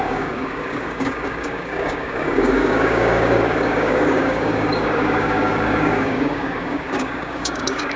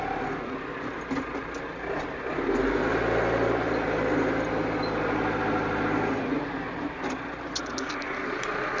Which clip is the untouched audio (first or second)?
second